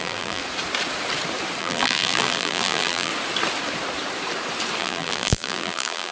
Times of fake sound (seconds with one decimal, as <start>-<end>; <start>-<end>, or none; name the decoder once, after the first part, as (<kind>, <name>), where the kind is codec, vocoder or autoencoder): 0.0-0.4 (vocoder, BigVGAN v2); 1.6-3.1; 4.8-6.1